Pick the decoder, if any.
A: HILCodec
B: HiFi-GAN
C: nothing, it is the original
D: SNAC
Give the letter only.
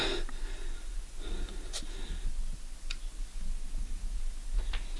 C